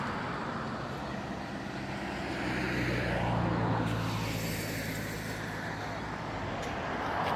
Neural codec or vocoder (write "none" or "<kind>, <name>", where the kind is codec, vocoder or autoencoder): none